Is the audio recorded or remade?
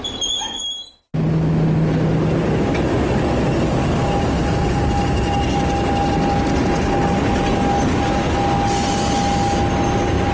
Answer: recorded